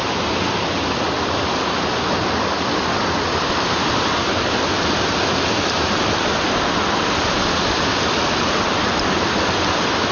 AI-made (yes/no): no